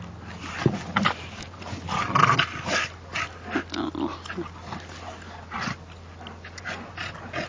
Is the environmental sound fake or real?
real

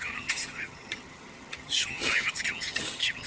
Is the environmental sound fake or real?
fake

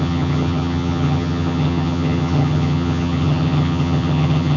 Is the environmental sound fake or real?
fake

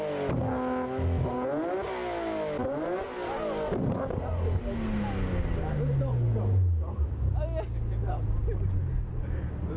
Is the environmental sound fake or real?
real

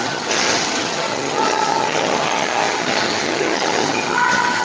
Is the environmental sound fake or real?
fake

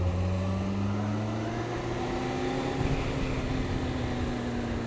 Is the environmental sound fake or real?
real